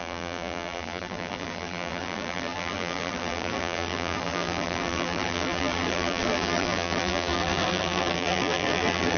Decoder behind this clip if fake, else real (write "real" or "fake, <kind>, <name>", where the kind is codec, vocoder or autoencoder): fake, vocoder, BigVGAN v2